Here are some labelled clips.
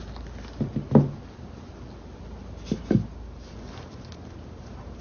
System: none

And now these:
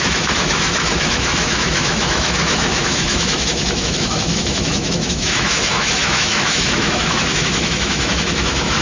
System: autoencoder, DAC-VAE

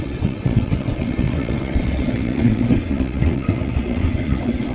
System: vocoder, WaveNeXt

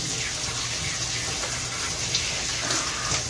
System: none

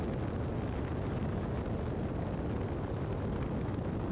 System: none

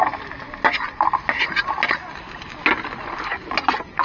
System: none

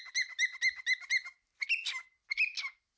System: none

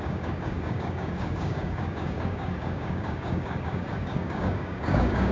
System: codec, DAC